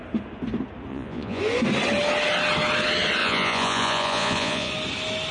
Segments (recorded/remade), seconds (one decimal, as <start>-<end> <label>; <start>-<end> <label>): 0.0-0.9 recorded; 0.9-1.4 remade; 1.4-3.2 recorded; 3.2-4.7 remade; 4.7-5.3 recorded